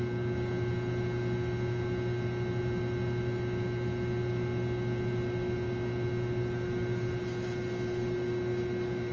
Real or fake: real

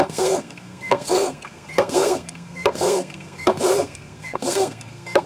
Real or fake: fake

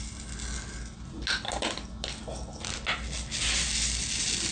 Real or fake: real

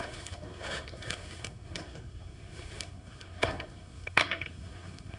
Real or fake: fake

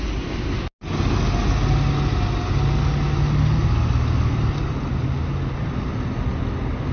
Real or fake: real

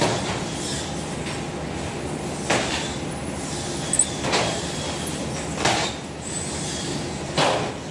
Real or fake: real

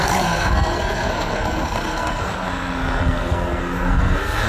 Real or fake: fake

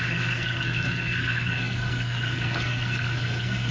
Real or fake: fake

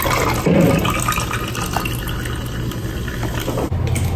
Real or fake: real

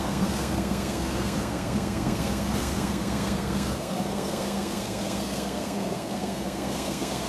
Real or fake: fake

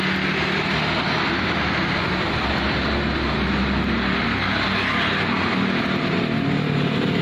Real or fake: real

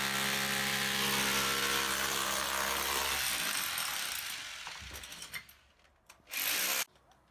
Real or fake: real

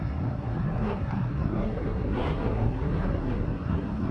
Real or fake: fake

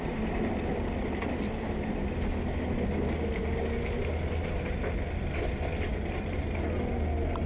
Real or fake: real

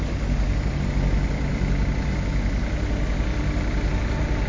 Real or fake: real